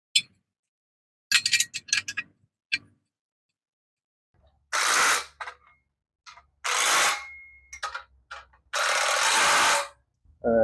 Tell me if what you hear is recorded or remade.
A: recorded